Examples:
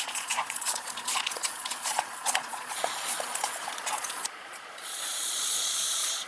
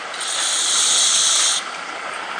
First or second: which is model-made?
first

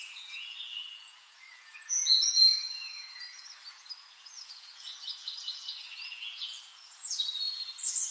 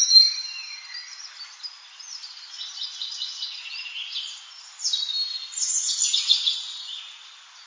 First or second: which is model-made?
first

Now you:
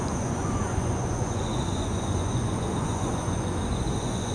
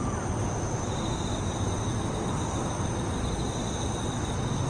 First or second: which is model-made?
first